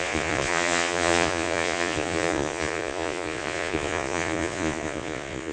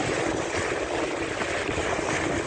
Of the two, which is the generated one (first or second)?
first